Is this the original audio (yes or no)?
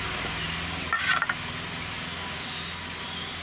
yes